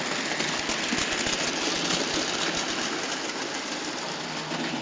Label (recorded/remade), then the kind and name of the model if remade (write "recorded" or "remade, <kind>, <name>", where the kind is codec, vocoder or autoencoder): recorded